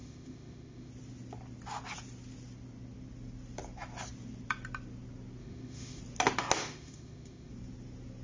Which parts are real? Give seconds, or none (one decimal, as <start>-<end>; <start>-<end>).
0.9-5.4; 6.0-6.6; 7.5-8.2